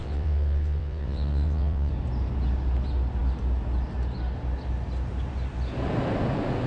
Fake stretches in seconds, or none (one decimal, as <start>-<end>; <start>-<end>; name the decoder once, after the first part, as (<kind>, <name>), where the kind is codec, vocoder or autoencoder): 0.0-1.9 (vocoder, WaveNeXt)